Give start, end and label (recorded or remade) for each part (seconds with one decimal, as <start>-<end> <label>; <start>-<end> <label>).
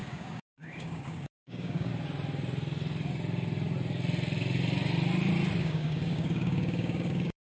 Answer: 0.0-1.9 remade; 1.9-5.6 recorded; 5.6-7.4 remade